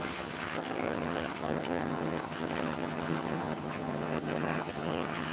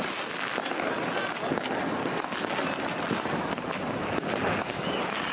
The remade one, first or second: first